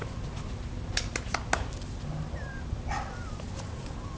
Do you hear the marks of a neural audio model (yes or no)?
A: no